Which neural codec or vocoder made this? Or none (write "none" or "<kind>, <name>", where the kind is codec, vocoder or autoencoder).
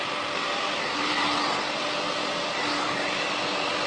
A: none